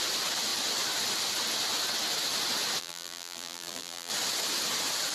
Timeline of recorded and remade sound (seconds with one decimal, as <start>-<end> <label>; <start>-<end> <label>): 0.0-2.8 recorded; 2.8-4.1 remade; 4.1-5.1 recorded